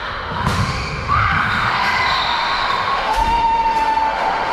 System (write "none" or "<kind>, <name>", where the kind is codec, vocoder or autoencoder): autoencoder, DAC-VAE